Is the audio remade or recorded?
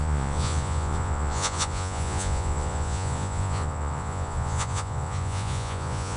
remade